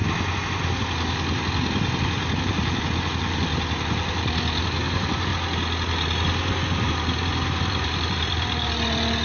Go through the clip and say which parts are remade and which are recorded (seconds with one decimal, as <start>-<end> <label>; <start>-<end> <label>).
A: 0.0-2.4 recorded; 2.4-5.3 remade; 5.3-6.9 recorded; 6.9-9.2 remade